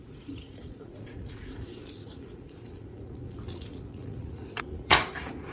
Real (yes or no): no